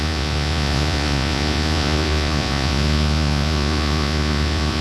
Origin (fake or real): fake